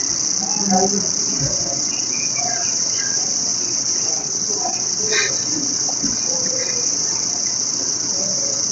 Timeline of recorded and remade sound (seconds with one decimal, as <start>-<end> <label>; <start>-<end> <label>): 0.0-1.2 recorded; 1.2-8.7 remade